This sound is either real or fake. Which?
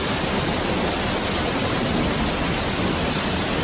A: real